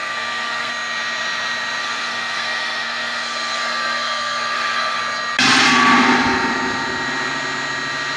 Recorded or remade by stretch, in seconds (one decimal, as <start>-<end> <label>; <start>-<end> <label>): 0.0-0.7 remade; 0.7-1.8 recorded; 1.8-5.0 remade; 5.0-8.2 recorded